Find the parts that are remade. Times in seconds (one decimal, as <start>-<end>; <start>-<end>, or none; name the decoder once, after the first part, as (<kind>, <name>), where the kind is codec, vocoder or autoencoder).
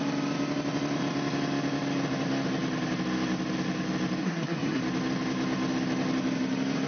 4.2-4.8 (codec, SNAC)